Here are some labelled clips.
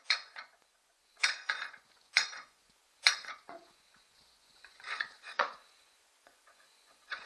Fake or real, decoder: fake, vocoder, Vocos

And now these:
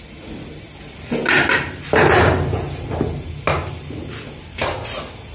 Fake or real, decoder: real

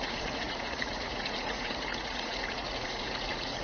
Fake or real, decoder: fake, vocoder, Vocos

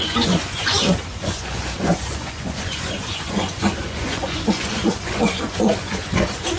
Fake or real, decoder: fake, vocoder, Vocos